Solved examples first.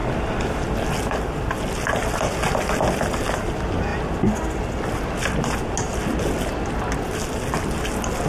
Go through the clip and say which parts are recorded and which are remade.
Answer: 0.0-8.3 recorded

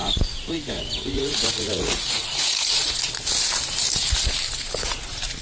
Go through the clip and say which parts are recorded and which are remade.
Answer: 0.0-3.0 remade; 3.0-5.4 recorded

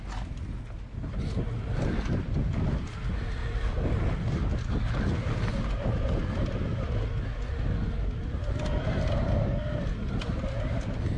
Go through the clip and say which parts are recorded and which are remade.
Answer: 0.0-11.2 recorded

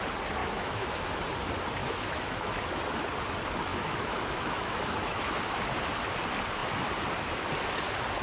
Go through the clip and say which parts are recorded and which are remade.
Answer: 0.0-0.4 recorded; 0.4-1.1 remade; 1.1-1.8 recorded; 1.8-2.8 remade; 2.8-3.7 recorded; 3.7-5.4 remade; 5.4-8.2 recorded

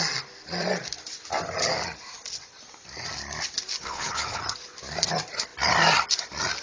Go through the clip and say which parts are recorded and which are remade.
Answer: 0.0-3.8 recorded; 3.8-4.4 remade; 4.4-6.6 recorded

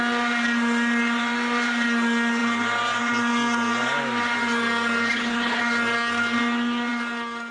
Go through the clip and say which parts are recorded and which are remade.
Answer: 0.0-5.1 recorded; 5.1-5.6 remade; 5.6-7.5 recorded

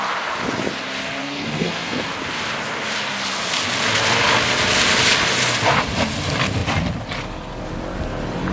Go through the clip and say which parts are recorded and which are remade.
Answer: 0.0-1.2 recorded; 1.2-2.1 remade; 2.1-8.5 recorded